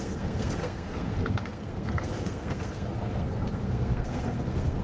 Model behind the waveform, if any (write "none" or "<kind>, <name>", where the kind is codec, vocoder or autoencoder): codec, SNAC